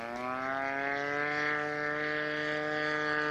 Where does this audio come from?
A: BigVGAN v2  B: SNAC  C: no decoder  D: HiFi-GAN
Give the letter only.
C